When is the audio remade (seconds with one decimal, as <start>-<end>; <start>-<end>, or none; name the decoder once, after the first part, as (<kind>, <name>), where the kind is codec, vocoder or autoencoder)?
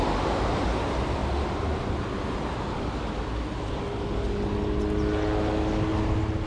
none